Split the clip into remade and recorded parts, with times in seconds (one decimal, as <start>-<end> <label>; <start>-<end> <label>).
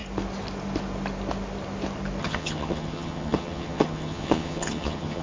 0.0-2.2 recorded; 2.2-5.2 remade